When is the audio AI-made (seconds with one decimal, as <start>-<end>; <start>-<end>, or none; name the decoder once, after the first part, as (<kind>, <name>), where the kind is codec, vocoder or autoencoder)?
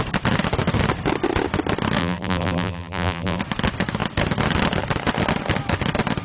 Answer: 2.0-3.4 (vocoder, BigVGAN v2)